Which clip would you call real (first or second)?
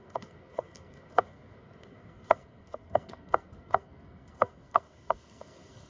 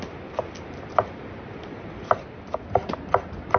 second